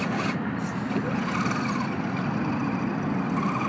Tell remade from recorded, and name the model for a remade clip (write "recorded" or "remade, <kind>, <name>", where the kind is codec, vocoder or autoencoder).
recorded